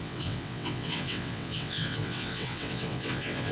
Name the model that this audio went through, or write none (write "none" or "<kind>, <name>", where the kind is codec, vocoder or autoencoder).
vocoder, WaveNeXt